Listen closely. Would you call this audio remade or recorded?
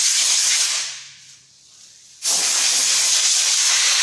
recorded